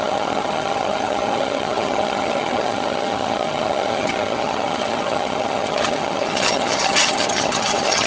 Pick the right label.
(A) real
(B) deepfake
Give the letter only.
B